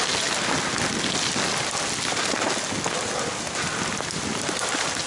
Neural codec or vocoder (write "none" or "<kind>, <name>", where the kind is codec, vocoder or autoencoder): none